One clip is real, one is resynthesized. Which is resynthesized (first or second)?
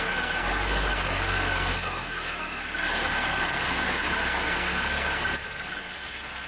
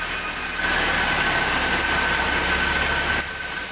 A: first